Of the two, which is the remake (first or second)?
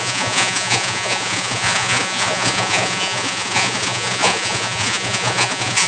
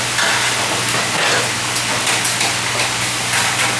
first